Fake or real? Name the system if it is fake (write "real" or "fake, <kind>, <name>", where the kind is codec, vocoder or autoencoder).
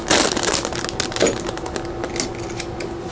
real